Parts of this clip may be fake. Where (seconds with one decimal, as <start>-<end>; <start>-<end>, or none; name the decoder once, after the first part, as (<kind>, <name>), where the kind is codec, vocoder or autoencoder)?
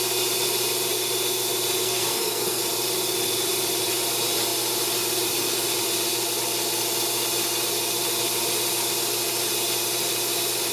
1.8-2.6 (codec, SNAC)